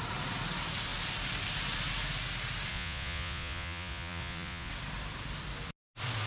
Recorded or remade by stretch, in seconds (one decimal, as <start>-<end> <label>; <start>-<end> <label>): 0.0-2.7 recorded; 2.7-4.7 remade; 4.7-6.3 recorded